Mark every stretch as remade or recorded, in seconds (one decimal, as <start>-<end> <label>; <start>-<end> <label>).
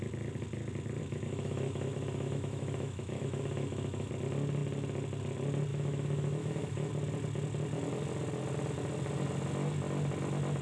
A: 0.0-1.0 recorded; 1.0-4.1 remade; 4.1-5.7 recorded; 5.7-6.9 remade; 6.9-10.6 recorded